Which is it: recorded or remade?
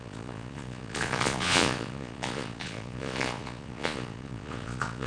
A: remade